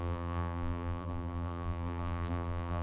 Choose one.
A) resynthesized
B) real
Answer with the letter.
A